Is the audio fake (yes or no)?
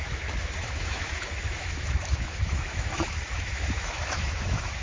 yes